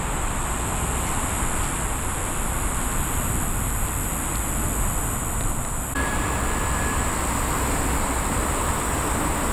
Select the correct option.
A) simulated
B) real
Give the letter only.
A